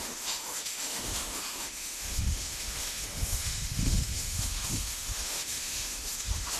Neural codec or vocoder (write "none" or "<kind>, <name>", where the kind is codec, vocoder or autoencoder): autoencoder, DAC-VAE